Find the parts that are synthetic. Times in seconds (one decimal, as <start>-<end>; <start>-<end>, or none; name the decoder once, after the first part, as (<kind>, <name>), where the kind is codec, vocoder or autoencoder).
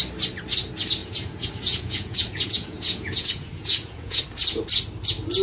1.0-4.2 (vocoder, Vocos)